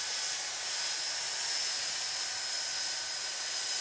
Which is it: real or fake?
real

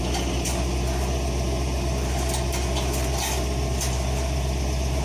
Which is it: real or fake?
real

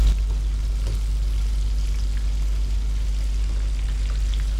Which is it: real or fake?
real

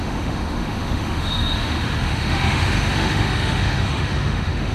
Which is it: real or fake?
fake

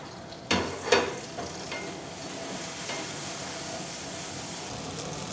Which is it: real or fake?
real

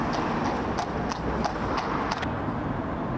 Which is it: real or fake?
real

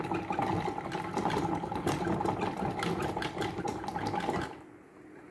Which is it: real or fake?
real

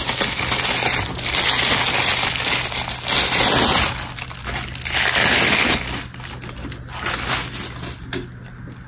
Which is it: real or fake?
real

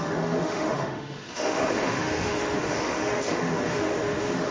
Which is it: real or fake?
fake